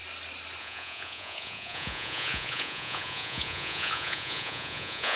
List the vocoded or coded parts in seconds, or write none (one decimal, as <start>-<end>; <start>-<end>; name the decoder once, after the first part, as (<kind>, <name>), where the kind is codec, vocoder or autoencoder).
0.6-5.2 (vocoder, Vocos)